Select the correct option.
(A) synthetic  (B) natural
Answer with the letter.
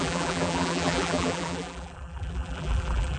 A